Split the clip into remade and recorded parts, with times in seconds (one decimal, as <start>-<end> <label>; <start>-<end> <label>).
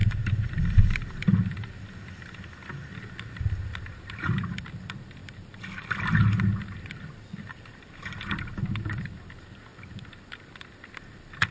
0.0-2.4 remade; 2.4-3.9 recorded; 3.9-4.4 remade; 4.4-11.5 recorded